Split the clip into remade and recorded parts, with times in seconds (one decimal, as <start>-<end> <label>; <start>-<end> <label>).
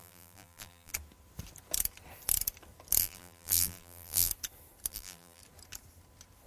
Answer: 0.0-0.9 remade; 0.9-3.0 recorded; 3.0-4.3 remade; 4.3-4.9 recorded; 4.9-5.4 remade; 5.4-6.5 recorded